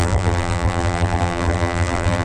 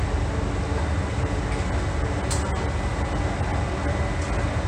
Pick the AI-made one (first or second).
first